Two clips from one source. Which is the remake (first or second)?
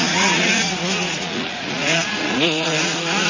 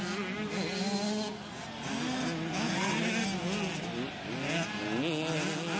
first